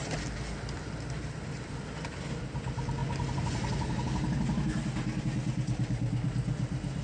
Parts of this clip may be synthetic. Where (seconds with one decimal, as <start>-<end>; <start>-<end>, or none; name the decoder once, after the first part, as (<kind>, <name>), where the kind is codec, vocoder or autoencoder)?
none